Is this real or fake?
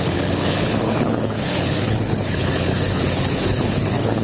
fake